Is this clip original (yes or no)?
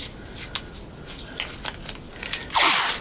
yes